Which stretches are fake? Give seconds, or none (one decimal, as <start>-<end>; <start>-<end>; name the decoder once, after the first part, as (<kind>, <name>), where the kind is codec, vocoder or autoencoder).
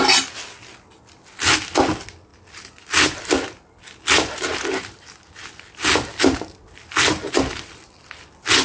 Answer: none